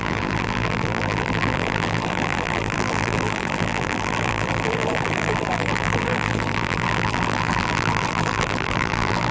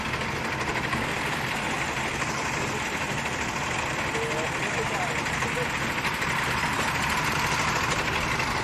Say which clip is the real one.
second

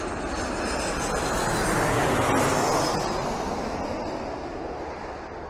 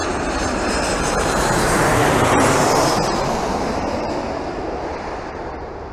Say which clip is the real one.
first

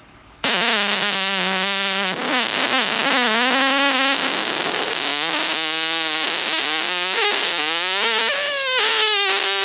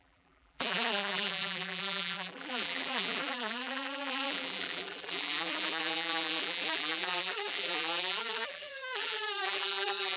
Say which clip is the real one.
first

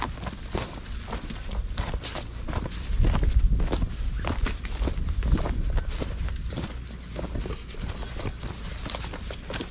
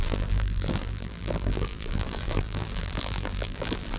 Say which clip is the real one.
first